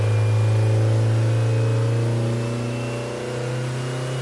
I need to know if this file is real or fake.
real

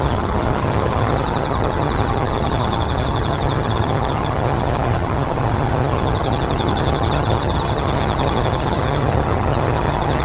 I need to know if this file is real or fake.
fake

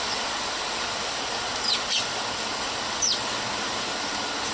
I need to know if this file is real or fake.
real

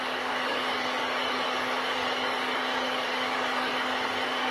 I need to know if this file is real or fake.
fake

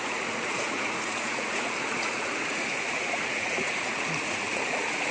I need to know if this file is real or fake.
fake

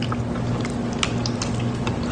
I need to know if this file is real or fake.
real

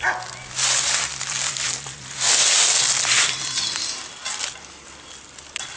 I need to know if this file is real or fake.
real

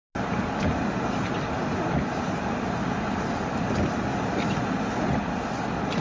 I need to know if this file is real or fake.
real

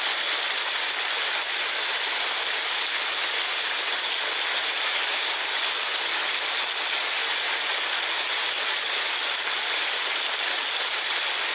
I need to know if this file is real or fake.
real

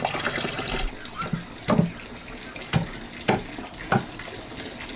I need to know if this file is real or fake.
real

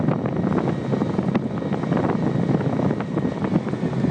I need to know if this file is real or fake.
real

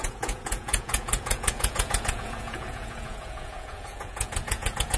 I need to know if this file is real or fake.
fake